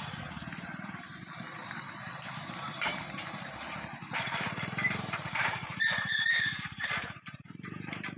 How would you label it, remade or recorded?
remade